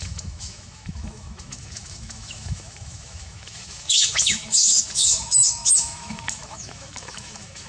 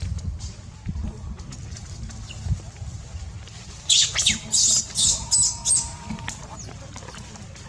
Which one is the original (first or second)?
second